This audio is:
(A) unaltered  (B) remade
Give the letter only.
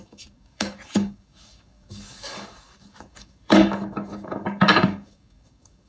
B